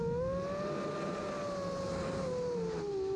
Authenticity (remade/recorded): recorded